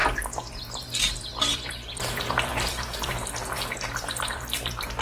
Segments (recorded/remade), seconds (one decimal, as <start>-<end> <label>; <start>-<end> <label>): 0.0-5.0 remade